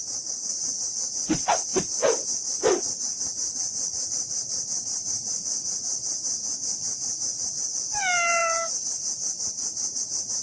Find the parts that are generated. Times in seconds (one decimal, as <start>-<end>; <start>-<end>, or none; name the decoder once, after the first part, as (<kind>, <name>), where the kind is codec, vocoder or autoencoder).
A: none